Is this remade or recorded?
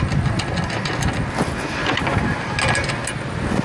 recorded